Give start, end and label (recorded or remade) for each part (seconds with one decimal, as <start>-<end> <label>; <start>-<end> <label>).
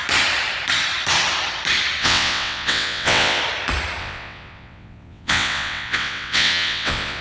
0.0-2.0 recorded; 2.0-3.4 remade; 3.4-4.0 recorded; 4.0-7.2 remade